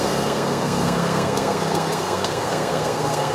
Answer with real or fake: fake